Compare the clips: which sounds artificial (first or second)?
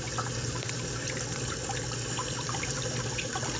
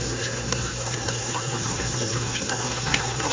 second